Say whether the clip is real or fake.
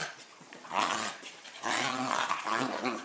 fake